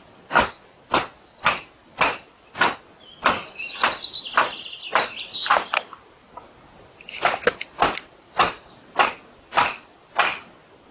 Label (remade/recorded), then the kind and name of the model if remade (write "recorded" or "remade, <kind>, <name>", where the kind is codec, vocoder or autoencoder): recorded